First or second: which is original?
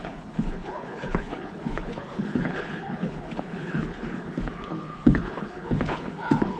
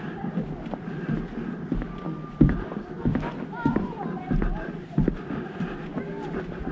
second